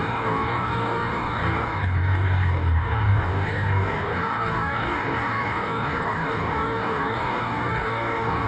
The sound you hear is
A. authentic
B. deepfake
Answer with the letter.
B